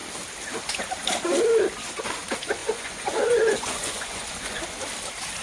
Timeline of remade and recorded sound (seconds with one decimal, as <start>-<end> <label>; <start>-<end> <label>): 0.0-2.6 recorded; 2.6-4.6 remade; 4.6-5.4 recorded